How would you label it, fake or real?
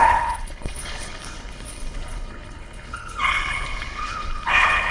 fake